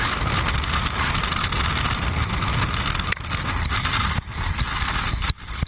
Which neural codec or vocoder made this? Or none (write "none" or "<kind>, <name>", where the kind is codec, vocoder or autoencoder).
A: none